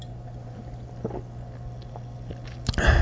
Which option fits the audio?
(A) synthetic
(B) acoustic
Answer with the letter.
B